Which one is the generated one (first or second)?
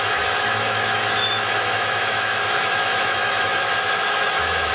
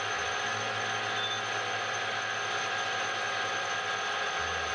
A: first